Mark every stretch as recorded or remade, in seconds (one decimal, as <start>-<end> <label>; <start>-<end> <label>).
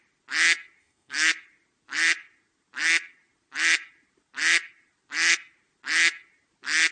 0.0-0.8 recorded; 0.8-1.3 remade; 1.3-6.9 recorded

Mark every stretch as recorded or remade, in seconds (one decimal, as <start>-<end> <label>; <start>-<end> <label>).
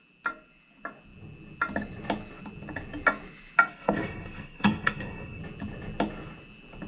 0.0-3.7 recorded; 3.7-5.4 remade; 5.4-6.9 recorded